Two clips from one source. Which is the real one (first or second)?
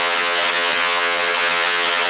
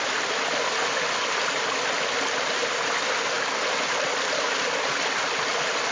second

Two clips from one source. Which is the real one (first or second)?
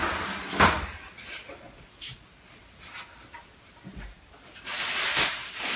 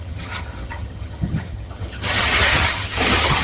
first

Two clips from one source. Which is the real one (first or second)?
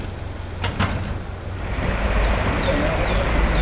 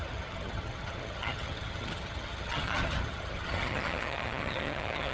first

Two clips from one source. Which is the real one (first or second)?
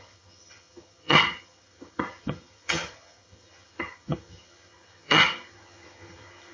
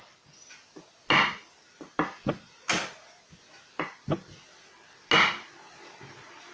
second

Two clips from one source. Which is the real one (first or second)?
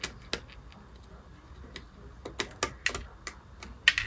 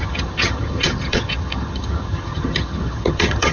first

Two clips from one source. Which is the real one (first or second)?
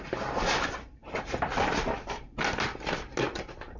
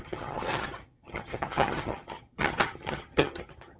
first